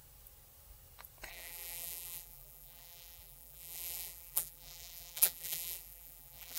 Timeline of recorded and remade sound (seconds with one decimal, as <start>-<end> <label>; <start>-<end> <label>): 0.0-1.3 recorded; 1.3-6.6 remade

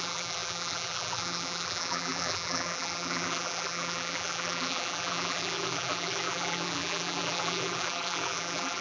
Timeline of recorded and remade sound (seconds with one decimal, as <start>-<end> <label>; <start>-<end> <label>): 0.0-8.8 remade

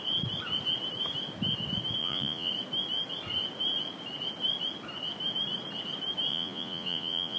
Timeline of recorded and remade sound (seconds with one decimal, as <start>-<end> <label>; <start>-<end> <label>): 0.0-2.0 recorded; 2.0-2.5 remade; 2.5-6.3 recorded; 6.3-7.4 remade

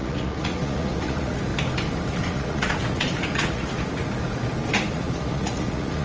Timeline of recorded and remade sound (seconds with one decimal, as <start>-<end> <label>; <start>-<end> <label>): 0.0-1.5 remade; 1.5-2.1 recorded; 2.1-4.0 remade; 4.0-4.9 recorded; 4.9-6.0 remade

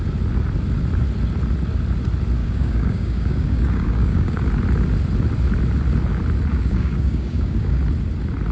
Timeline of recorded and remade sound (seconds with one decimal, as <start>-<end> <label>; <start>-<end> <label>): 0.0-2.4 recorded; 2.4-4.4 remade; 4.4-6.5 recorded; 6.5-7.8 remade; 7.8-8.5 recorded